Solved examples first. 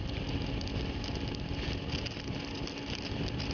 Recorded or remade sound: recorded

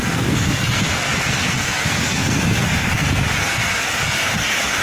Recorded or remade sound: remade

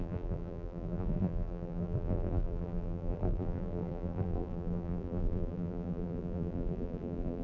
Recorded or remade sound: remade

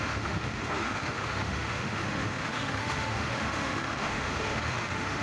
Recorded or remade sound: remade